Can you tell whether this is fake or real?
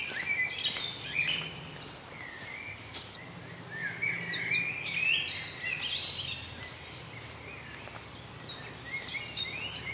real